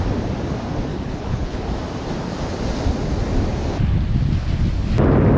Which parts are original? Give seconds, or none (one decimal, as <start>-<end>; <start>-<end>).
0.0-0.9; 1.6-5.4